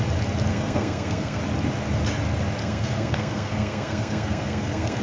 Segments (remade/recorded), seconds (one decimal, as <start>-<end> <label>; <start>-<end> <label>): 0.0-0.5 recorded; 0.5-1.4 remade; 1.4-2.6 recorded; 2.6-5.0 remade

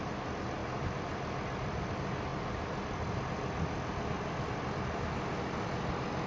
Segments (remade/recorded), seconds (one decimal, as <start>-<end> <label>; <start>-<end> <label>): 0.0-0.6 recorded; 0.6-1.9 remade; 1.9-6.3 recorded

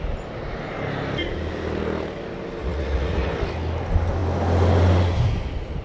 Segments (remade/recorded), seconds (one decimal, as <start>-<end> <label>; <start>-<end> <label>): 0.0-2.6 recorded; 2.6-3.3 remade; 3.3-5.8 recorded

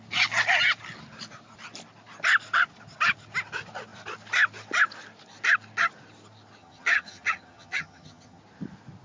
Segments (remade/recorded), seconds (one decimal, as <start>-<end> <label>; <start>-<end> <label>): 0.0-6.6 recorded; 6.6-8.4 remade; 8.4-9.0 recorded

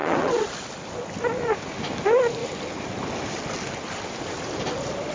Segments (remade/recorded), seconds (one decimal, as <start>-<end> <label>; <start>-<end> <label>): 0.0-0.5 remade; 0.5-5.1 recorded